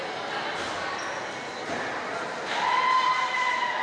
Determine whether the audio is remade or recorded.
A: recorded